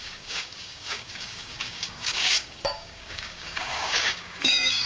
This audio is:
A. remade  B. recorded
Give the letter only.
A